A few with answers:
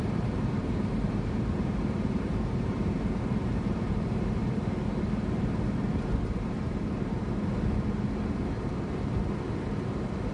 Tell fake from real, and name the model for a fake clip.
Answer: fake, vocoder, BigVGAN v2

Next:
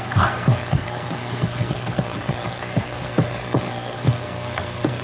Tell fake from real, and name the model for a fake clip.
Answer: fake, codec, SNAC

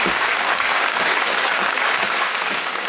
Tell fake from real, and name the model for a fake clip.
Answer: fake, codec, DAC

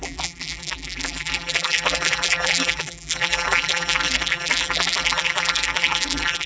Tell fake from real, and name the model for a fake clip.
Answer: fake, vocoder, BigVGAN v2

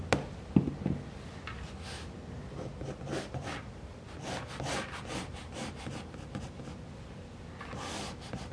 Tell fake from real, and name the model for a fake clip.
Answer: real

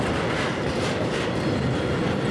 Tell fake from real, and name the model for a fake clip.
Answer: real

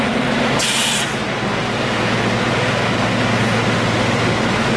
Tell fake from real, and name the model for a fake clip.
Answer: real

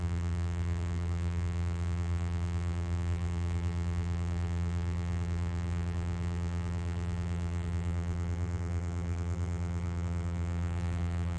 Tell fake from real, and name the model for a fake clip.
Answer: fake, vocoder, BigVGAN v2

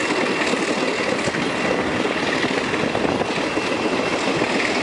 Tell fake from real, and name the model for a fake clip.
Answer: real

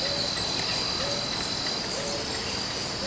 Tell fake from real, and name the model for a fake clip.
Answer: real